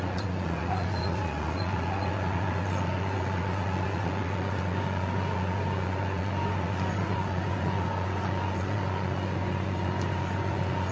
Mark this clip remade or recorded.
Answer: remade